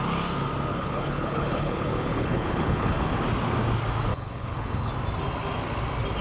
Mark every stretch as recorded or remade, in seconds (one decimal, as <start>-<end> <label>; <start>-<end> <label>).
0.0-0.7 recorded; 0.7-3.1 remade; 3.1-4.1 recorded; 4.1-4.9 remade; 4.9-6.2 recorded